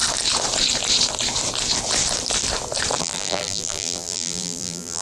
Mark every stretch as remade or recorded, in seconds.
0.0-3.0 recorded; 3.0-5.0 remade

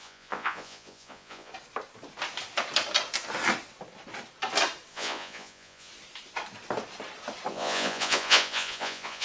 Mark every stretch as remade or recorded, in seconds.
0.0-1.5 remade; 1.5-4.9 recorded; 4.9-5.9 remade; 5.9-7.5 recorded; 7.5-9.2 remade

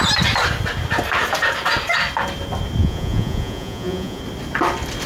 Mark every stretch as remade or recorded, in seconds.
0.0-2.8 recorded; 2.8-4.2 remade; 4.2-5.1 recorded

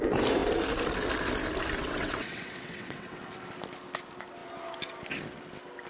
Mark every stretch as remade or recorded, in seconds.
0.0-1.8 recorded; 1.8-3.2 remade; 3.2-5.9 recorded

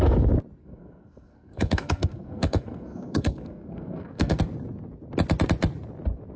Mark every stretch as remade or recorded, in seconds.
0.0-0.6 recorded; 0.6-4.4 remade; 4.4-6.4 recorded